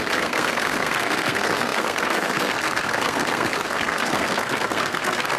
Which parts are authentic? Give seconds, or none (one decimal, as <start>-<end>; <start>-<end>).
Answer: none